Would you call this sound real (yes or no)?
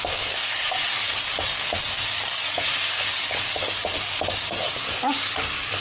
no